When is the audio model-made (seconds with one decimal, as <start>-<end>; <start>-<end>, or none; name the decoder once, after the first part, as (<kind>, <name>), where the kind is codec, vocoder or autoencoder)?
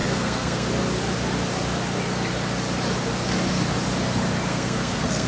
0.0-0.7 (codec, SNAC); 4.5-5.3